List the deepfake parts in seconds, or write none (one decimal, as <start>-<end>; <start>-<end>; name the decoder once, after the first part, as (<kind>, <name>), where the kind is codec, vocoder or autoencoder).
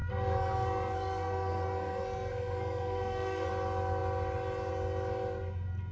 0.0-3.5 (codec, SNAC)